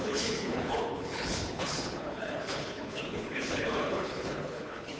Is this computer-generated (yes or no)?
yes